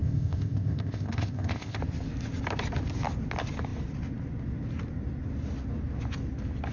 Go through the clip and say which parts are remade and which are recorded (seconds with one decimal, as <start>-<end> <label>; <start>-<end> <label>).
0.0-1.8 remade; 1.8-6.7 recorded